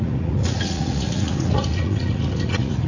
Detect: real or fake fake